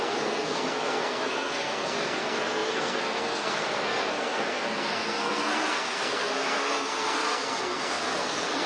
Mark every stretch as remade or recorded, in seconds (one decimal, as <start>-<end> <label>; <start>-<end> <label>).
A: 0.0-8.7 remade